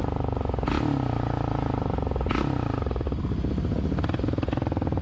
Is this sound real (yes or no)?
yes